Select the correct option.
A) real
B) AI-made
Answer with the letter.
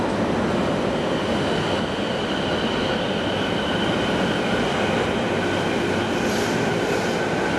A